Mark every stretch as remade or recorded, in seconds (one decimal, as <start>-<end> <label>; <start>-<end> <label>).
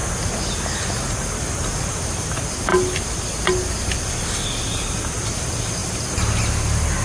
0.0-7.0 recorded